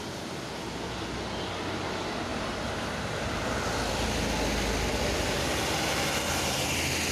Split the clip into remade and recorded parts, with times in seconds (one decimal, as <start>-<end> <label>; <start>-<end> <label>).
0.0-7.1 recorded